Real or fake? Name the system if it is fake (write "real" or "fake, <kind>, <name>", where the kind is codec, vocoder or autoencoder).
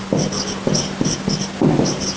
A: real